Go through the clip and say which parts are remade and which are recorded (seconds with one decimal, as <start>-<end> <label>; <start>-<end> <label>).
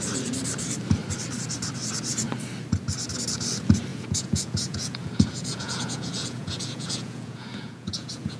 0.0-3.9 recorded; 3.9-8.4 remade